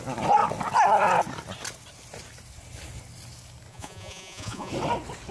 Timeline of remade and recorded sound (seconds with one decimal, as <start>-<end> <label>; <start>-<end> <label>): 0.0-3.7 recorded; 3.7-4.7 remade; 4.7-5.3 recorded